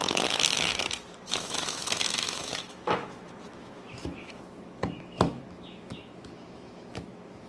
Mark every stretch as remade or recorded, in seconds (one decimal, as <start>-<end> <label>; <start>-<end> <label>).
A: 0.0-0.7 remade; 0.7-1.3 recorded; 1.3-7.5 remade